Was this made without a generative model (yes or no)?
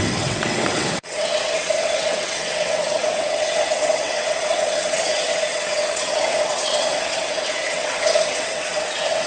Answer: no